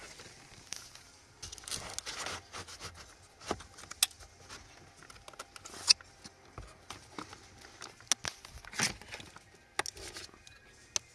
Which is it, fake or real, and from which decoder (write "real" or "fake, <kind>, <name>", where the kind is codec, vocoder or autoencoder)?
real